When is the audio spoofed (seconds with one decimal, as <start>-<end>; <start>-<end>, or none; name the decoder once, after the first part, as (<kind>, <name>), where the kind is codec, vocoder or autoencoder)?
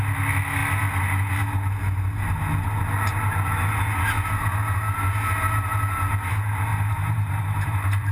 6.7-8.1 (vocoder, BigVGAN v2)